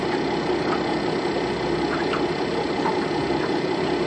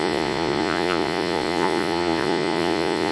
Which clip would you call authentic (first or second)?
first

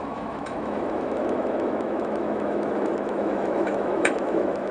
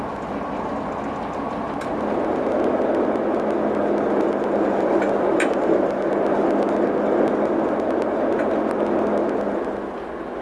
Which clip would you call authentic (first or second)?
second